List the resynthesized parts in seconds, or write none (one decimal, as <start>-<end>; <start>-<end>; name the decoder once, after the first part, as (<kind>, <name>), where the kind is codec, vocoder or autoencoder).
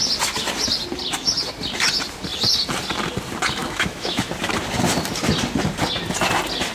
3.6-4.3 (autoencoder, DAC-VAE)